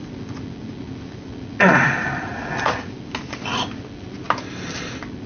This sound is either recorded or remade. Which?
recorded